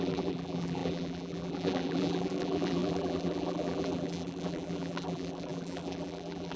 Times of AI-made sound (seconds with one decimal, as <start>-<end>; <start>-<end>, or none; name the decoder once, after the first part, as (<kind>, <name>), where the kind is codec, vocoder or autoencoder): 0.0-6.6 (vocoder, BigVGAN v2)